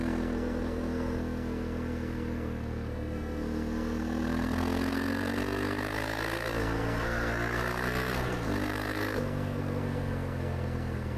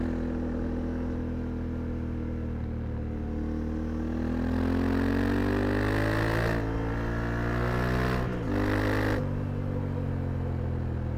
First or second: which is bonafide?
second